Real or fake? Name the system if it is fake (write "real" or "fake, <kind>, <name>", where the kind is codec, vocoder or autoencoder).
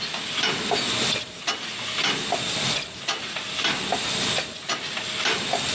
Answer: real